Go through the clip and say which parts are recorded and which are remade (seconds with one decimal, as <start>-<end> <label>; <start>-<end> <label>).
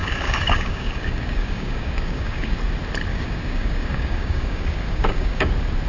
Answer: 0.0-2.6 remade; 2.6-3.1 recorded; 3.1-5.5 remade; 5.5-5.9 recorded